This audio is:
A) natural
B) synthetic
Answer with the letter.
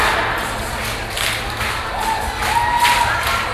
A